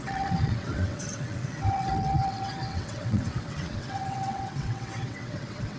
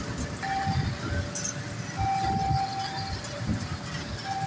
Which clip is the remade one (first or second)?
first